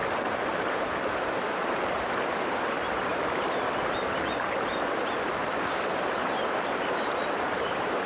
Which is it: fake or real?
real